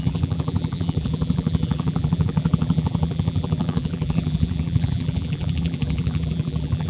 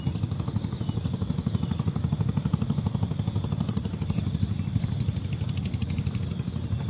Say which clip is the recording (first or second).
second